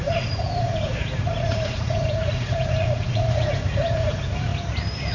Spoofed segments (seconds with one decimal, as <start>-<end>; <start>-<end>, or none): 0.0-4.5